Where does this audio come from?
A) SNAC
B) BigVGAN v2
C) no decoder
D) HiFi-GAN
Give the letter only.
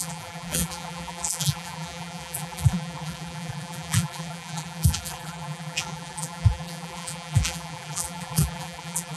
B